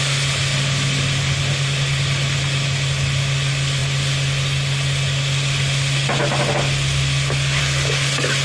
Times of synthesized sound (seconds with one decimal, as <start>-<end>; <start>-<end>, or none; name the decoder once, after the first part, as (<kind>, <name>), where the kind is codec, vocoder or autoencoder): none